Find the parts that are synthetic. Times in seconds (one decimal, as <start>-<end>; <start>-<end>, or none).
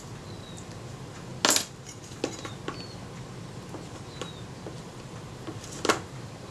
0.0-1.3; 4.9-6.5